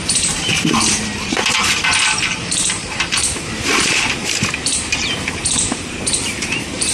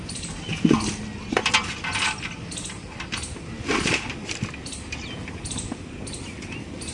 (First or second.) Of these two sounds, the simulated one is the first